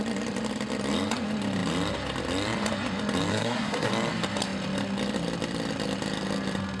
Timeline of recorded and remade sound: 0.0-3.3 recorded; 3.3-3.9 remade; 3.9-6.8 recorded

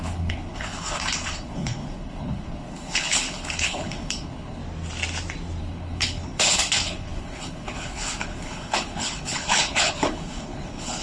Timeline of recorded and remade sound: 0.0-4.6 remade; 4.6-5.6 recorded; 5.6-11.0 remade

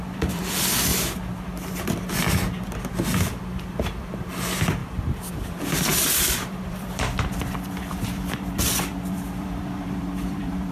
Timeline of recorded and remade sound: 0.0-0.9 remade; 0.9-2.8 recorded; 2.8-4.8 remade; 4.8-5.3 recorded; 5.3-10.7 remade

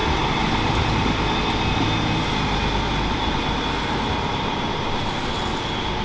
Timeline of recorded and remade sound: 0.0-6.0 recorded

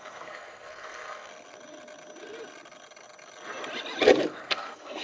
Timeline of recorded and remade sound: 0.0-1.3 remade; 1.3-4.3 recorded; 4.3-5.0 remade

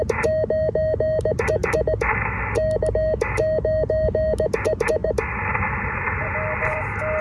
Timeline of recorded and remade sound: 0.0-5.0 recorded; 5.0-7.2 remade

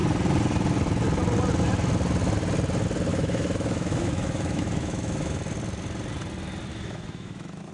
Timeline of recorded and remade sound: 0.0-3.1 recorded; 3.1-5.4 remade; 5.4-6.7 recorded; 6.7-7.7 remade

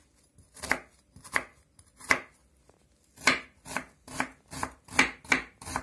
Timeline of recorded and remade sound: 0.0-5.8 recorded